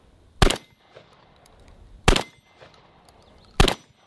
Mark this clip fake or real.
real